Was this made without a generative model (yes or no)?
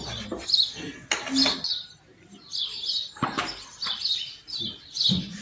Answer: yes